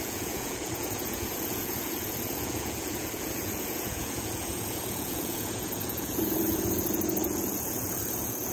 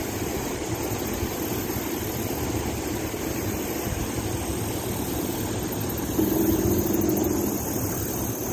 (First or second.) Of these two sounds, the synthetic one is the first